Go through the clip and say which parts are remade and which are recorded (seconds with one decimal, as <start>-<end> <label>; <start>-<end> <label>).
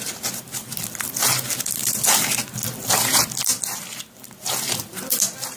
0.0-5.6 recorded